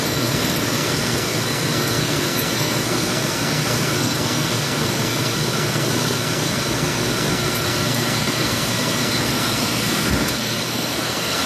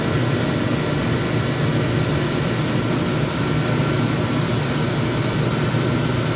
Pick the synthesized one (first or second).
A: first